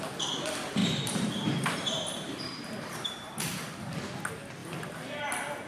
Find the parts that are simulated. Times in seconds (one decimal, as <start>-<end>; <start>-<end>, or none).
0.8-3.7; 4.6-5.2